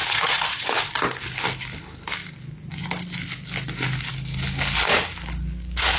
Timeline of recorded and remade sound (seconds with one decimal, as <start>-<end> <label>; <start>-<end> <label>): 0.0-0.9 remade; 0.9-6.0 recorded